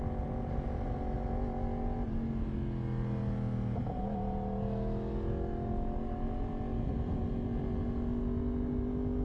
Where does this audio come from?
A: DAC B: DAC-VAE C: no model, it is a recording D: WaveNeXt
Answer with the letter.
C